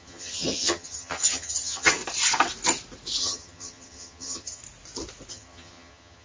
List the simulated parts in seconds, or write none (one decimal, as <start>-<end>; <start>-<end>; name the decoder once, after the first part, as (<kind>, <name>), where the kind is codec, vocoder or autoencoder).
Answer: 0.0-2.0 (vocoder, HiFi-GAN); 3.2-4.6; 5.3-6.2